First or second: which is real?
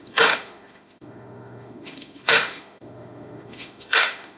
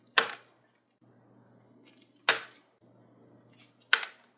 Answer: second